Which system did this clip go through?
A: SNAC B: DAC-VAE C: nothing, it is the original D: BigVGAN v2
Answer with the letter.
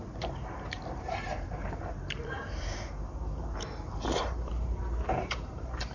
D